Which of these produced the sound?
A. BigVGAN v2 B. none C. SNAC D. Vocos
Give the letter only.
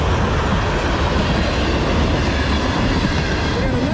B